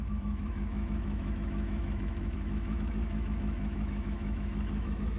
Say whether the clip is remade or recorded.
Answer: remade